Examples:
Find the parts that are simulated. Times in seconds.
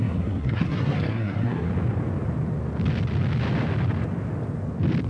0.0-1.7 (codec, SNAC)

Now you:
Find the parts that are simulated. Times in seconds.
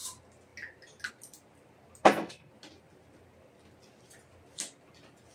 2.0-2.5 (codec, SNAC)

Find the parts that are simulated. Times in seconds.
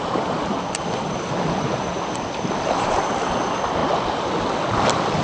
none